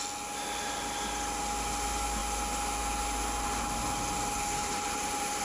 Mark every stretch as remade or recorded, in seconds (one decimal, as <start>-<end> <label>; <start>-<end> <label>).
0.0-4.6 recorded; 4.6-5.4 remade